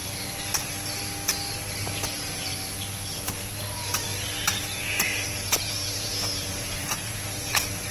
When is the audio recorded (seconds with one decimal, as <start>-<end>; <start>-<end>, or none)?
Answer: 0.0-4.7